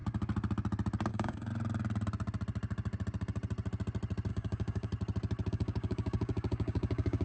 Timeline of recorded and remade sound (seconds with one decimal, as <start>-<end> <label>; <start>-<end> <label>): 0.0-1.1 recorded; 1.1-1.5 remade; 1.5-4.3 recorded; 4.3-4.9 remade; 4.9-5.5 recorded; 5.5-7.2 remade